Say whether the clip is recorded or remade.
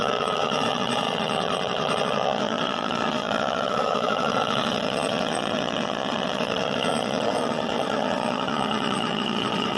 remade